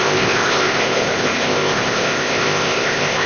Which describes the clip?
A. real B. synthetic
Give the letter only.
B